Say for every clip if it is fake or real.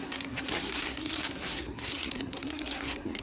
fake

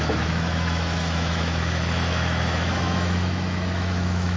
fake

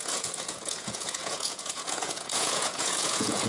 fake